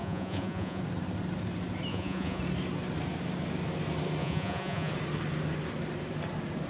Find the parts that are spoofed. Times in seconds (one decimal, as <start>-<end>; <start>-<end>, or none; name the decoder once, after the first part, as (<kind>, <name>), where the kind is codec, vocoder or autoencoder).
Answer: 0.0-0.8 (vocoder, Vocos); 1.9-2.4; 4.2-4.9